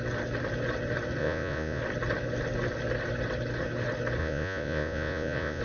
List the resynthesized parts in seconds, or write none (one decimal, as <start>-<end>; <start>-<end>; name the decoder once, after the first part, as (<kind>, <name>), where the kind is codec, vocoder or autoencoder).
1.2-1.8 (vocoder, Vocos); 4.2-5.6